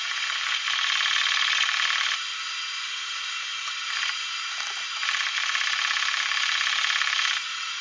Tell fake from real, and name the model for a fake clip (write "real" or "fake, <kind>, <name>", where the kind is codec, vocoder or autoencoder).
real